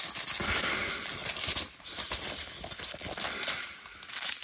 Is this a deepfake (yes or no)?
no